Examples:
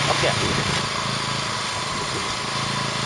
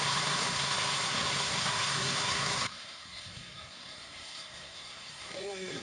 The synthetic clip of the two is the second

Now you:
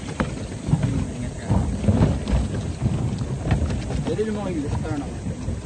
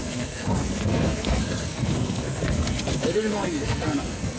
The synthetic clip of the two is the second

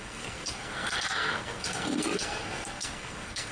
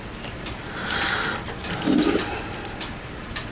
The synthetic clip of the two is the first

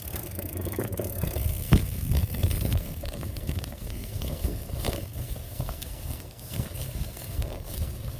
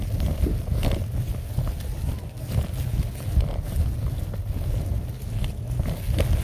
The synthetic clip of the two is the first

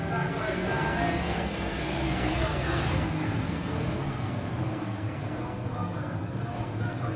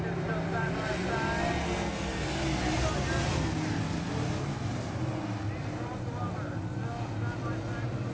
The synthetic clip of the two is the first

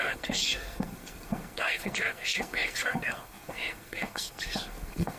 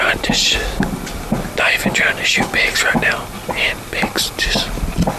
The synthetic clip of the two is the first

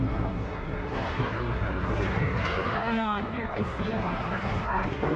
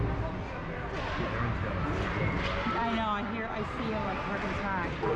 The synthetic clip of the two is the first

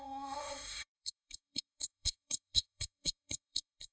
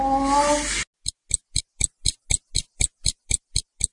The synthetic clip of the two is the first